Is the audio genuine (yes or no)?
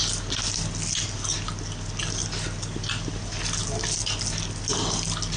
yes